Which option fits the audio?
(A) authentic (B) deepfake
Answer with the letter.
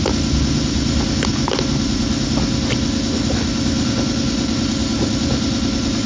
A